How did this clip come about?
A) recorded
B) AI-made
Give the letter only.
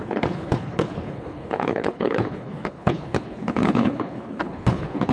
B